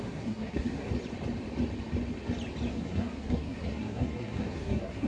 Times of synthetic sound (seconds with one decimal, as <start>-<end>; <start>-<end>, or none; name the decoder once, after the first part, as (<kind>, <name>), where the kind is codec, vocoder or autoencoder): 0.0-0.9 (codec, SNAC); 2.7-5.1